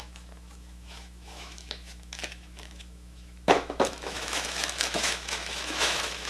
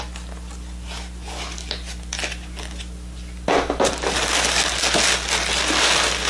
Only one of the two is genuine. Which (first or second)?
second